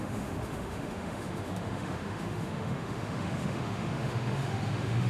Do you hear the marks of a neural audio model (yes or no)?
yes